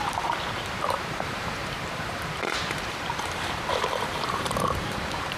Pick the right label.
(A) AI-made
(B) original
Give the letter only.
A